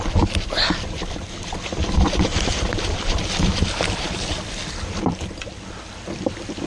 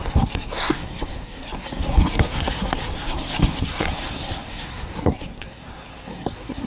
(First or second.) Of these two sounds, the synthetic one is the second